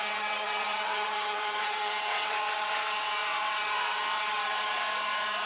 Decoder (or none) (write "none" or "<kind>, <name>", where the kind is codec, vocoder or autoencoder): vocoder, WaveNeXt